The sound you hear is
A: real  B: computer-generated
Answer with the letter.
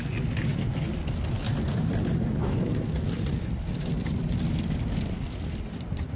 A